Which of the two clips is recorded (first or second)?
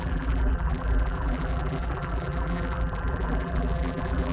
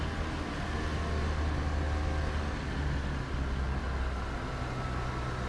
second